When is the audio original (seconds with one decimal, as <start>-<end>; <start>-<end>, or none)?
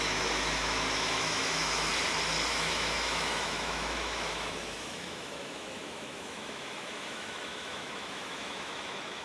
1.9-2.5